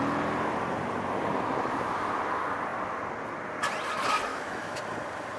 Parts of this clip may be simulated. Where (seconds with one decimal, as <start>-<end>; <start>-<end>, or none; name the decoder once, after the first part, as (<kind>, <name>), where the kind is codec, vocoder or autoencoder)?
4.3-4.8 (autoencoder, DAC-VAE)